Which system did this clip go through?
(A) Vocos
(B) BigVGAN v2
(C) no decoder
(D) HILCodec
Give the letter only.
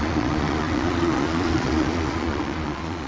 A